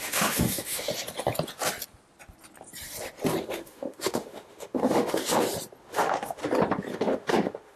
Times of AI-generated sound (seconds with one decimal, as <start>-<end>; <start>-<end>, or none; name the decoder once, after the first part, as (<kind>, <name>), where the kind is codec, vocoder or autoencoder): 0.0-0.9 (autoencoder, DAC-VAE); 3.4-5.2; 5.8-6.4; 6.9-7.8